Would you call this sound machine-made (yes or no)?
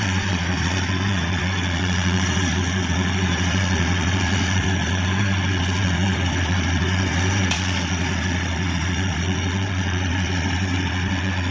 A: yes